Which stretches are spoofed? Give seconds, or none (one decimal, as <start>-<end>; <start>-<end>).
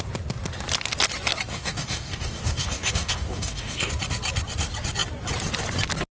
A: 1.5-3.9